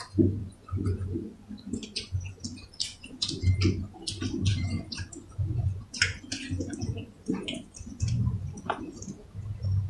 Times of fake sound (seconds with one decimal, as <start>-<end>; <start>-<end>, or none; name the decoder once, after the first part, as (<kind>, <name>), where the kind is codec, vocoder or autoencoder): 0.4-2.3 (vocoder, Vocos); 2.9-3.5; 4.5-8.8